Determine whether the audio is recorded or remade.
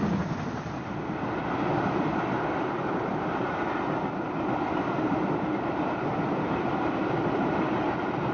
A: recorded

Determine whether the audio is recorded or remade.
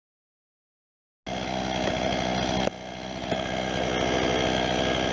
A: recorded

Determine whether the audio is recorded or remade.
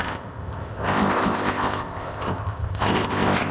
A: remade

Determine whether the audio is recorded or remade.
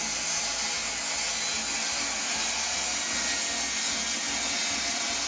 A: recorded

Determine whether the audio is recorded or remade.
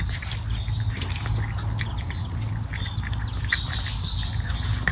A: recorded